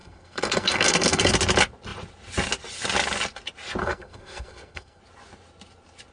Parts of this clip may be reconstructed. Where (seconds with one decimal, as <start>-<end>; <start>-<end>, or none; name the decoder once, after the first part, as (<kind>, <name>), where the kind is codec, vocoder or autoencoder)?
0.0-1.3 (codec, SNAC); 3.8-5.0